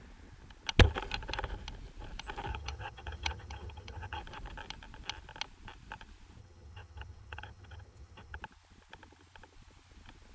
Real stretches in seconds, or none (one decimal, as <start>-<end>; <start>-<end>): 0.0-2.5; 4.2-6.4; 8.4-10.3